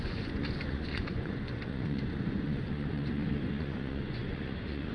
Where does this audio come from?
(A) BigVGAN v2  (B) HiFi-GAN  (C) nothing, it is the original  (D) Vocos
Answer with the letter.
D